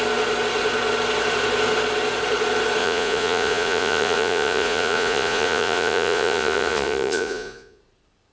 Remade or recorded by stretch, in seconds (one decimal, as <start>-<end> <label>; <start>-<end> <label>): 0.0-2.8 recorded; 2.8-7.8 remade; 7.8-8.3 recorded